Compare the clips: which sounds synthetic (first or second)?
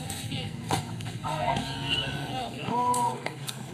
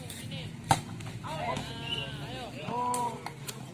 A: first